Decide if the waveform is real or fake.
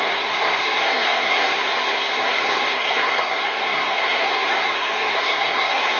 fake